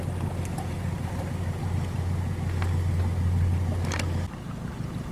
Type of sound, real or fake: real